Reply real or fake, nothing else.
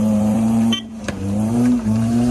fake